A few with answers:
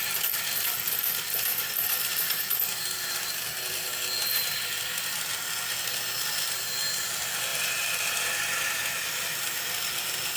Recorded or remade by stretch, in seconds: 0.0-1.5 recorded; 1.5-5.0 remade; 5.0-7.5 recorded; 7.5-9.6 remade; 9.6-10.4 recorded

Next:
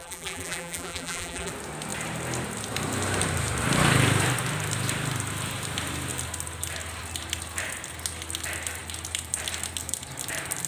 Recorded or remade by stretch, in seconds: 0.0-1.5 remade; 1.5-10.7 recorded

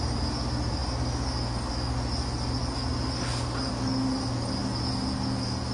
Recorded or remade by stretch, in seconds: 0.0-5.7 recorded

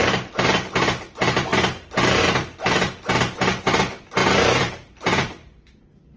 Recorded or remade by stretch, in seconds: 0.0-4.2 recorded; 4.2-5.6 remade; 5.6-6.2 recorded

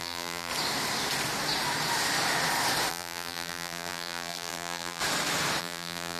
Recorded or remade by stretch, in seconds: 0.0-0.5 remade; 0.5-2.9 recorded; 2.9-5.0 remade; 5.0-5.6 recorded; 5.6-6.2 remade

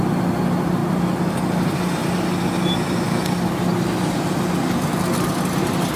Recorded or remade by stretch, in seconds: 0.0-6.0 recorded